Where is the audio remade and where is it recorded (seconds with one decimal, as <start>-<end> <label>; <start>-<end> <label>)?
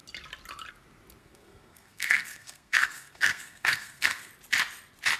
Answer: 0.0-1.2 recorded; 1.2-4.3 remade; 4.3-5.2 recorded